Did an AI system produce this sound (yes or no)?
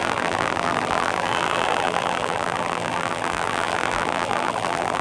yes